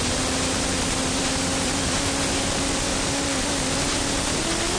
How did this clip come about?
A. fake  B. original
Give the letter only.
B